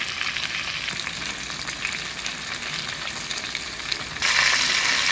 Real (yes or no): yes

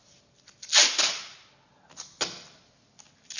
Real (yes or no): yes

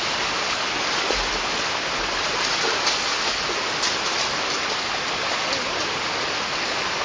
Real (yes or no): yes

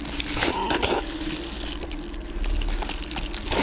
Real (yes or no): yes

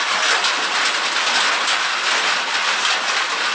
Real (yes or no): yes